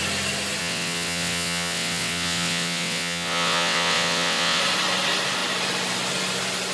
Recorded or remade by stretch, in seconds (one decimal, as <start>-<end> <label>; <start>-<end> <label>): 0.0-0.6 recorded; 0.6-4.6 remade; 4.6-6.7 recorded